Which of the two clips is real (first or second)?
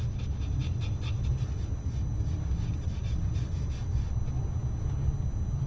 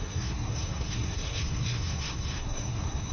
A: first